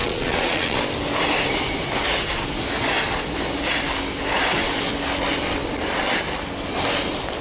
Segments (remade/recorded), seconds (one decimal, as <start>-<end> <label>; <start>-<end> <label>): 0.0-0.8 remade; 0.8-7.4 recorded